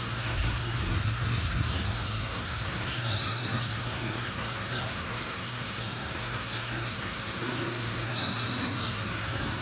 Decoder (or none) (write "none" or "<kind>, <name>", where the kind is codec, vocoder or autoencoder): codec, SNAC